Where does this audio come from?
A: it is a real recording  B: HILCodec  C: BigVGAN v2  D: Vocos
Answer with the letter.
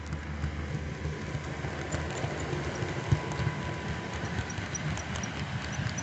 A